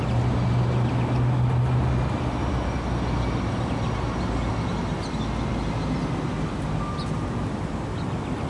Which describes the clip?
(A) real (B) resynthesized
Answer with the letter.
A